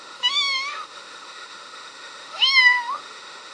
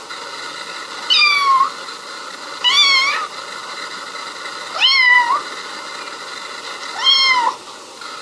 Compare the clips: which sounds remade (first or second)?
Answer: first